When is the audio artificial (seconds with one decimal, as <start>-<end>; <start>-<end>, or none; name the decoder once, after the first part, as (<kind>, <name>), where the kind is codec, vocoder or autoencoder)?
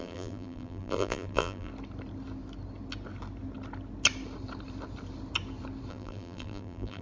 0.0-1.7 (vocoder, BigVGAN v2); 5.9-7.0